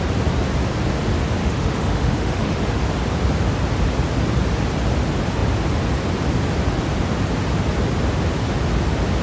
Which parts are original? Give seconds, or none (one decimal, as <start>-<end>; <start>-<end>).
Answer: 0.0-1.4; 2.6-9.2